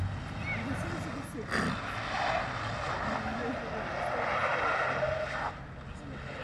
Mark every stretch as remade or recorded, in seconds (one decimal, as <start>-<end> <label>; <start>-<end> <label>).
0.0-6.4 recorded